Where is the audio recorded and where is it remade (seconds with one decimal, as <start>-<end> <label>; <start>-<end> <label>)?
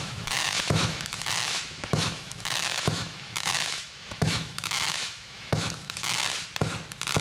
0.0-6.2 remade; 6.2-7.2 recorded